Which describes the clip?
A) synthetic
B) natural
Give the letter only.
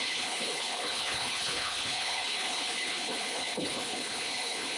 A